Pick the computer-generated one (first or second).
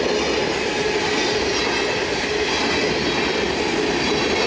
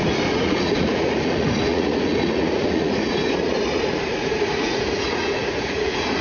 second